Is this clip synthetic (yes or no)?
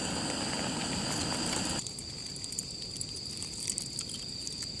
no